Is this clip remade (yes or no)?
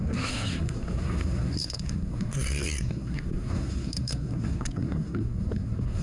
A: yes